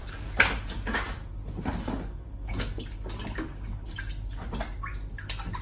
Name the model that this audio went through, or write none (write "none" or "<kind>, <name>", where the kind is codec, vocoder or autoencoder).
none